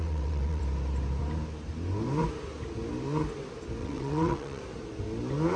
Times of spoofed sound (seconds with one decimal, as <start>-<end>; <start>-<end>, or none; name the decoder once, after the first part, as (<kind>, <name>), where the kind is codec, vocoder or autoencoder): 0.0-0.6 (vocoder, WaveNeXt); 3.8-4.6